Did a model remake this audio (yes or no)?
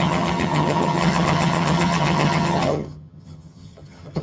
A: yes